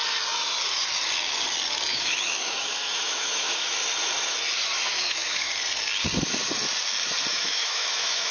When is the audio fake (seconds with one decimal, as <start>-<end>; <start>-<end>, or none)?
1.9-3.7; 4.9-5.5; 7.3-8.3